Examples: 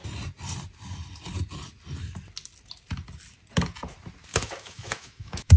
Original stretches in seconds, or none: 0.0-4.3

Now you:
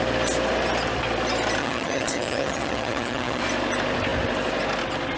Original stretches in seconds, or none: 0.0-1.6; 3.4-5.2

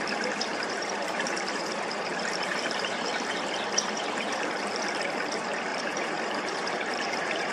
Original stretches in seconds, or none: 0.0-0.5; 3.1-5.7

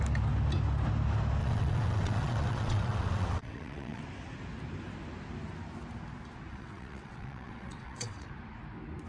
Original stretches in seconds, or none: 0.0-1.4; 4.0-6.5; 8.3-9.1

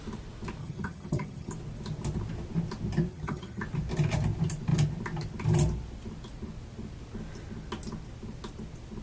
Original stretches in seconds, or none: 0.0-0.6; 1.5-3.1; 3.6-9.0

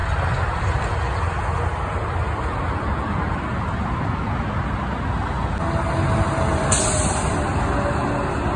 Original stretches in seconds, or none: 0.0-8.6

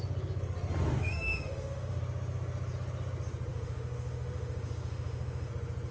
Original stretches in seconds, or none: 0.0-1.0; 2.0-3.5; 5.5-5.9

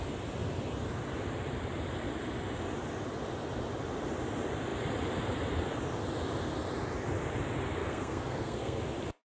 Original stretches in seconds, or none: 0.0-7.8; 8.8-9.3